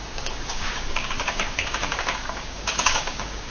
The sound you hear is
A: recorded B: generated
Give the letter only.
B